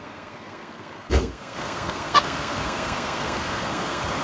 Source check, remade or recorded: remade